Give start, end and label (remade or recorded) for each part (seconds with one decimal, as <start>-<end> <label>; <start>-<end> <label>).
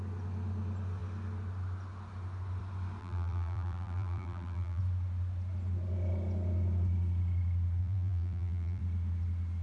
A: 0.0-3.0 recorded; 3.0-4.8 remade; 4.8-7.8 recorded; 7.8-8.8 remade; 8.8-9.6 recorded